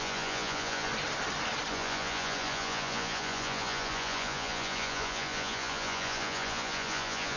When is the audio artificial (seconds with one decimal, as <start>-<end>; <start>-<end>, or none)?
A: 0.0-0.9; 1.7-7.4

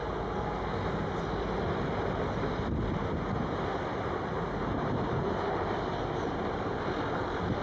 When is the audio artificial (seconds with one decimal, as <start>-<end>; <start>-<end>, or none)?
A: 3.9-6.0

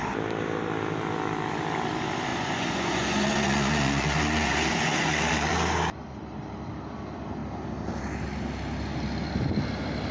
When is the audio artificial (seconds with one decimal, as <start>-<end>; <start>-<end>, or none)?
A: 2.3-5.5